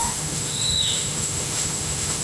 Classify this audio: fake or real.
fake